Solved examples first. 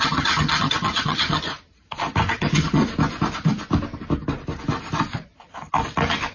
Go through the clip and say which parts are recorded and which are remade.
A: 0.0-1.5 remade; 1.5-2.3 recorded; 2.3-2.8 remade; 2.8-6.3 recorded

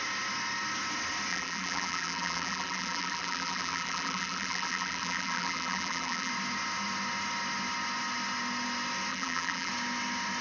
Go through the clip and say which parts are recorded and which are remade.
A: 0.0-1.3 recorded; 1.3-6.3 remade; 6.3-9.1 recorded; 9.1-9.7 remade; 9.7-10.4 recorded

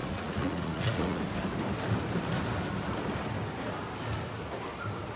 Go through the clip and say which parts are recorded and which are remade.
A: 0.0-1.2 remade; 1.2-5.2 recorded